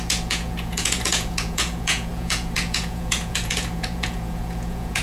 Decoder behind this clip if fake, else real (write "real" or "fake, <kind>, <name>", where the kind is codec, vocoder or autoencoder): fake, vocoder, Vocos